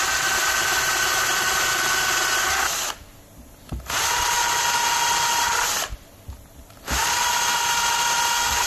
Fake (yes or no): no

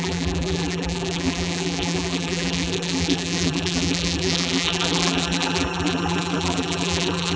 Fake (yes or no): yes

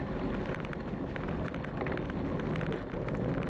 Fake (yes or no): no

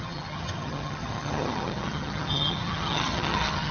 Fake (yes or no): yes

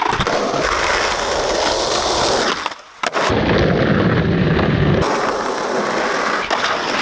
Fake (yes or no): no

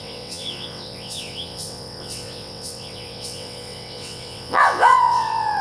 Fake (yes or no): yes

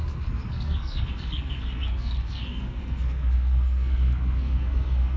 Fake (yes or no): yes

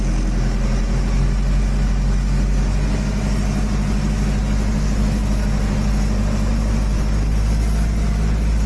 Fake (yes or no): no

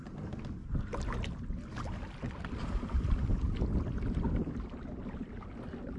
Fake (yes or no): no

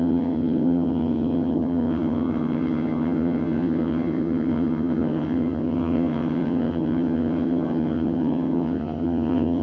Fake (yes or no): yes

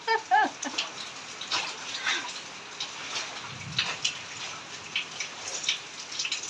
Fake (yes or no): no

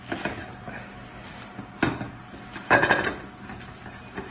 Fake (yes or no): no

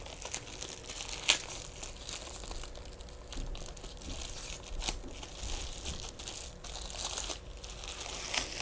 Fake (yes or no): no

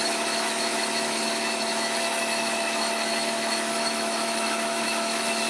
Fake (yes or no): yes